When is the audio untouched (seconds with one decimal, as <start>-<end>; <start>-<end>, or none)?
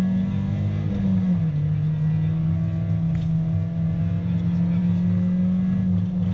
0.0-6.3